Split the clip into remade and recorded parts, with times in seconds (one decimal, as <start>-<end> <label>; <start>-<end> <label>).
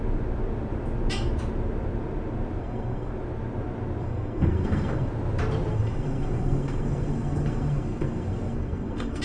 0.0-2.6 recorded; 2.6-3.1 remade; 3.1-4.0 recorded; 4.0-5.1 remade; 5.1-5.7 recorded; 5.7-9.2 remade